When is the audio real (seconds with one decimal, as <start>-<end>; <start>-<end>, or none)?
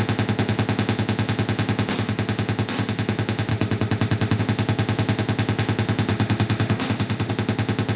0.0-3.5; 4.4-6.1; 7.3-8.0